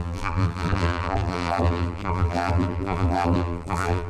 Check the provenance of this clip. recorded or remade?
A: remade